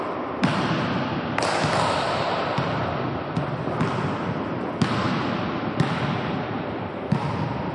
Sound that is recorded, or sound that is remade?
recorded